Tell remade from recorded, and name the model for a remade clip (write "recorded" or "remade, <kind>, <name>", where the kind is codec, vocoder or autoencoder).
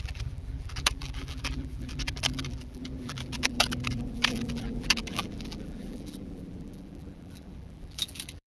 remade, vocoder, BigVGAN v2